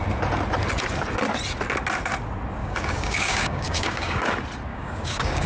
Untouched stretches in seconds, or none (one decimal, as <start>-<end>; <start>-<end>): 0.0-2.6; 4.3-4.7

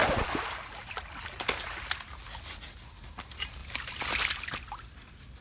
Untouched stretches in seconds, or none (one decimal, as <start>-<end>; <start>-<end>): 0.0-5.4

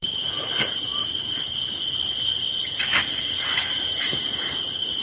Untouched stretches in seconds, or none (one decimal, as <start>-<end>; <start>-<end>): 0.9-3.6; 4.2-5.0